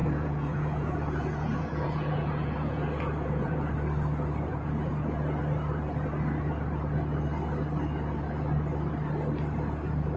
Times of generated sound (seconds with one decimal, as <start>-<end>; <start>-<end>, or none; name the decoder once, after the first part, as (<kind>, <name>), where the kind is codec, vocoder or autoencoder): 0.0-3.7 (vocoder, Vocos); 4.5-5.4